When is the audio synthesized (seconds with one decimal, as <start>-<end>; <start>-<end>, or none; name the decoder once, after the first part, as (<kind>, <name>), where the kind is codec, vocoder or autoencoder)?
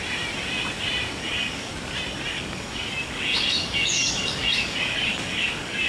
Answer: 1.2-1.7 (codec, DAC); 2.3-5.9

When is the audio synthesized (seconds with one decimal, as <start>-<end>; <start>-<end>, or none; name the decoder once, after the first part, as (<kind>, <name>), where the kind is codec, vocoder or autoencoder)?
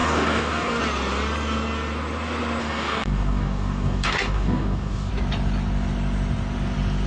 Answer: 0.0-0.8 (codec, DAC); 2.6-5.1